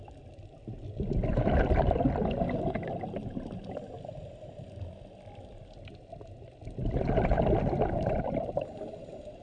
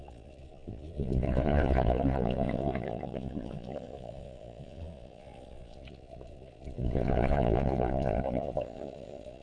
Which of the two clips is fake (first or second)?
second